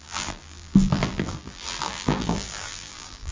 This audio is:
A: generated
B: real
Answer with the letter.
A